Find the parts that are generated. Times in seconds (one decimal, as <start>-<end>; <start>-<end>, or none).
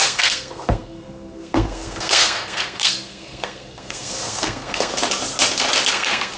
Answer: 0.0-4.9; 5.9-6.4